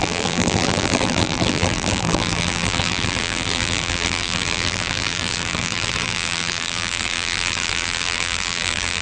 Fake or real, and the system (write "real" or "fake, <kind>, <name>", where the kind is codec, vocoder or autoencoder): fake, vocoder, BigVGAN v2